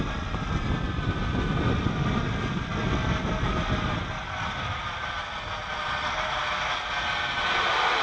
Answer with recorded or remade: recorded